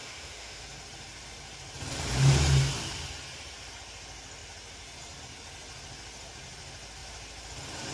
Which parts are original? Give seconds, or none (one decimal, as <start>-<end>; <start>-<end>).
0.6-7.9